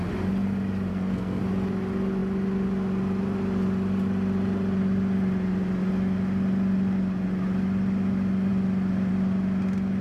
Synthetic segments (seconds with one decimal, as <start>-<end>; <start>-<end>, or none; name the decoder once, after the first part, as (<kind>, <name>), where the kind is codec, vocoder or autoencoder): 0.9-1.4 (codec, SNAC)